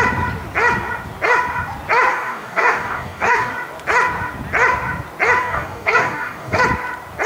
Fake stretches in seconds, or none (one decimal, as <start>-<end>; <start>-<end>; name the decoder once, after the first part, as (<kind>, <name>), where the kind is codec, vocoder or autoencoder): 2.1-3.5 (codec, DAC); 5.4-6.6